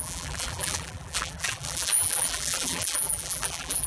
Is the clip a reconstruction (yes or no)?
yes